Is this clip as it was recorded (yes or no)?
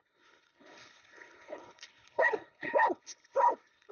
no